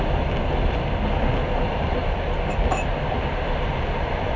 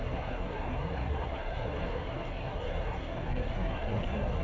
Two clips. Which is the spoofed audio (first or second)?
second